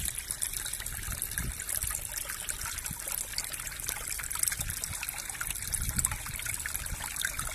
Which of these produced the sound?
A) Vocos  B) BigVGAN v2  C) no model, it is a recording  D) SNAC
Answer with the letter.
C